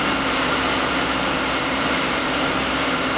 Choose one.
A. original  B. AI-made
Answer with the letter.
B